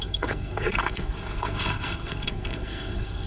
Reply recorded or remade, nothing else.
remade